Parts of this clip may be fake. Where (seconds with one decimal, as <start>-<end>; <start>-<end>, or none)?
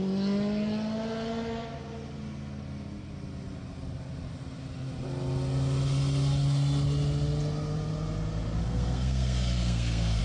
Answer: 8.6-10.2